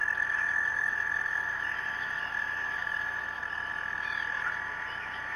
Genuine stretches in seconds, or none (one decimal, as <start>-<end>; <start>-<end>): 0.0-0.7